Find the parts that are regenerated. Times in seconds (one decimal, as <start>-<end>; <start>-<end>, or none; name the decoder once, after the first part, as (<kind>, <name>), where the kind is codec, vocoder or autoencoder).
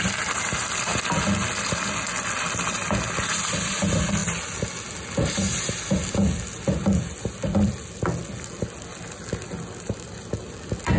none